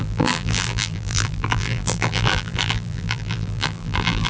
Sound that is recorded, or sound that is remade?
remade